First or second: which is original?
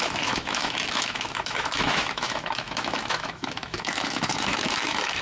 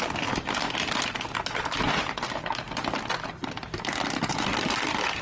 second